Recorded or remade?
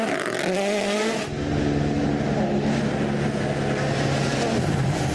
recorded